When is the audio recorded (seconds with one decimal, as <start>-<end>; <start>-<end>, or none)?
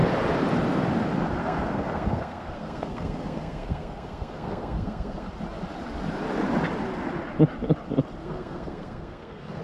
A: 0.0-1.4; 5.3-8.2